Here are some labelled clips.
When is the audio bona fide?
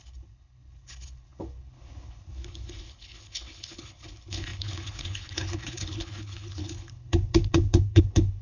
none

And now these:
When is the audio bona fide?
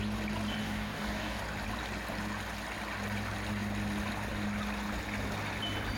0.0-0.6; 1.4-6.0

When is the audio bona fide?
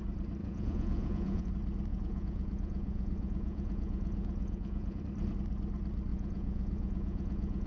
0.0-0.4; 1.5-1.9; 5.0-6.1